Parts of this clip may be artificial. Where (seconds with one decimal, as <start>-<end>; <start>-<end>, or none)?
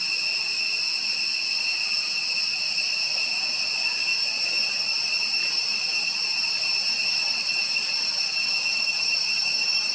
none